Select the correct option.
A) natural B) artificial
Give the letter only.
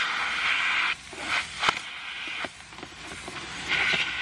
A